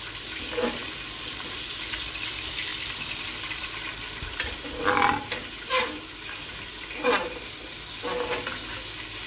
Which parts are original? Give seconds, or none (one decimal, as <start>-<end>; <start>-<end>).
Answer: 0.0-9.3